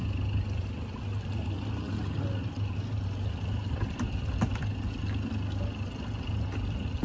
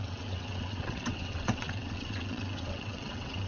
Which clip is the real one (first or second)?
first